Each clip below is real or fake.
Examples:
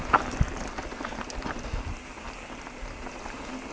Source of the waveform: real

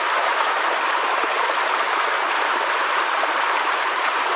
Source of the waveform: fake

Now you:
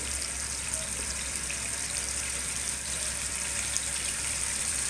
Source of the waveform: fake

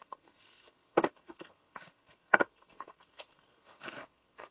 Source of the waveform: fake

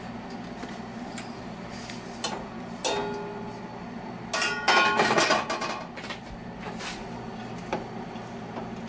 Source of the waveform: real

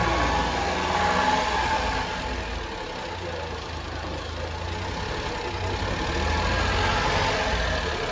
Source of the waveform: real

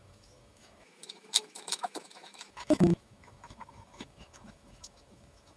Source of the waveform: fake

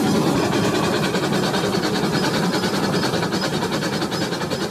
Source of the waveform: fake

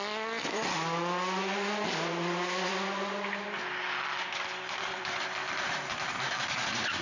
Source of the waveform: real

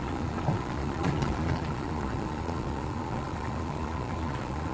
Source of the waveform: fake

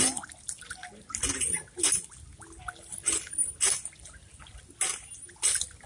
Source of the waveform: real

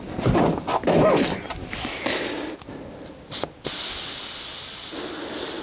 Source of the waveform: real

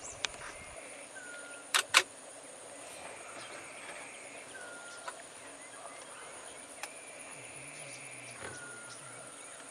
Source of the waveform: fake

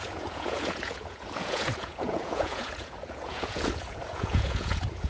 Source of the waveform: fake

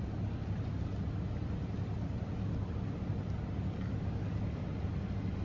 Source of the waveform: real